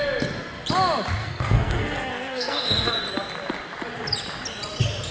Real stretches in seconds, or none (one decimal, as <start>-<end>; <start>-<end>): 0.0-1.2; 2.9-5.1